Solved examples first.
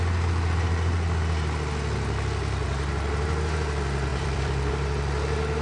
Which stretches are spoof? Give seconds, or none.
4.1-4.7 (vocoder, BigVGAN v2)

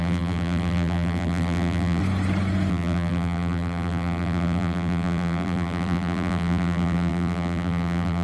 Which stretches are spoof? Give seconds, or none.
0.0-2.0 (vocoder, BigVGAN v2); 2.7-8.2

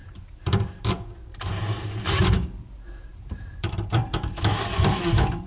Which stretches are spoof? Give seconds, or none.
0.0-5.5 (vocoder, BigVGAN v2)